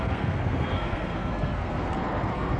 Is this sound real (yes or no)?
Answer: no